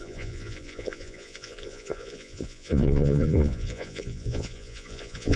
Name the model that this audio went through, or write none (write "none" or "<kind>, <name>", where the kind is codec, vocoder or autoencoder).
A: vocoder, Vocos